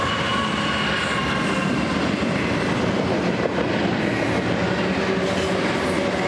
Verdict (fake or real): real